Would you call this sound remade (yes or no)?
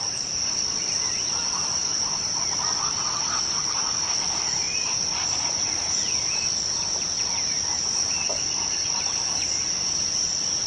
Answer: no